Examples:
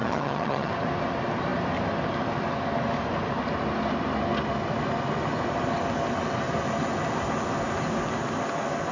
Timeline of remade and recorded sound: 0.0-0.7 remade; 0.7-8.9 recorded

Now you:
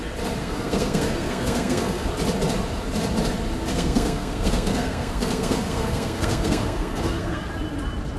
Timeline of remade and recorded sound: 0.0-0.4 recorded; 0.4-2.1 remade; 2.1-3.7 recorded; 3.7-7.5 remade; 7.5-8.2 recorded

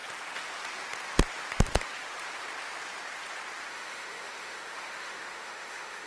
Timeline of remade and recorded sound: 0.0-3.7 recorded; 3.7-6.1 remade

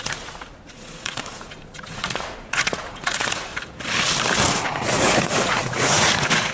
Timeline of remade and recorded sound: 0.0-3.5 remade; 3.5-4.5 recorded; 4.5-6.5 remade

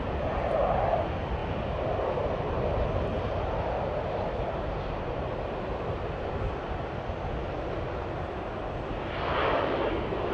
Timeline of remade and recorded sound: 0.0-9.4 recorded; 9.4-10.3 remade